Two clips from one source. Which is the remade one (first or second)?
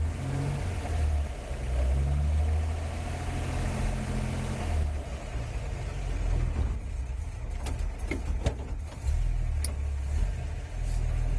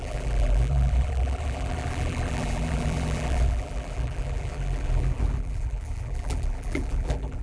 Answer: second